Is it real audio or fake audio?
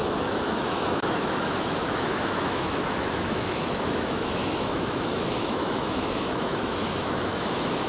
fake